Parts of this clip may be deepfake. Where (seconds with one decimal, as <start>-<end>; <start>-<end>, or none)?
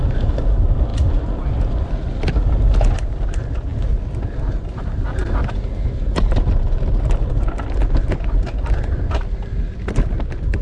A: none